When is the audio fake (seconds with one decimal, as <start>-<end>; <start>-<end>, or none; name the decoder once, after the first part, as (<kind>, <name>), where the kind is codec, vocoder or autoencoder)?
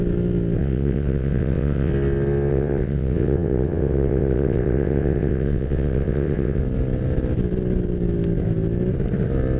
0.6-1.9 (vocoder, WaveNeXt); 2.5-6.6